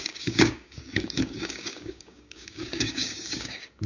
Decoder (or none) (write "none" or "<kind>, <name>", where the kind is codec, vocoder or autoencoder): codec, DAC